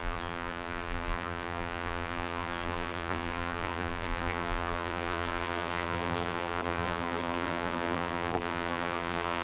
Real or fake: fake